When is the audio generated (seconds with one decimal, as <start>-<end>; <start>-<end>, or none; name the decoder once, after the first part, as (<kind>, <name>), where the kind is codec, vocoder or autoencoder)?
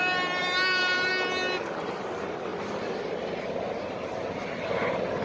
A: 0.4-1.1 (vocoder, BigVGAN v2); 2.5-3.3